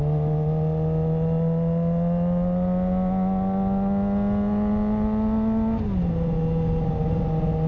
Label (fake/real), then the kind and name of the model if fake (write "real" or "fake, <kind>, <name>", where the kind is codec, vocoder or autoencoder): real